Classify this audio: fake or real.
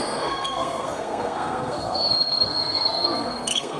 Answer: fake